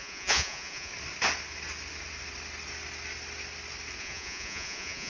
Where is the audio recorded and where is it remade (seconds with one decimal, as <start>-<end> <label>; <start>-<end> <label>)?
0.0-0.9 remade; 0.9-4.0 recorded; 4.0-5.1 remade